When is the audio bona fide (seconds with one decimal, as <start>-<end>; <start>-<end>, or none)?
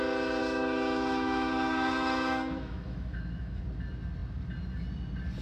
0.0-0.4; 3.6-5.4